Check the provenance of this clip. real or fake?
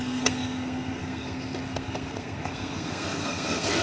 fake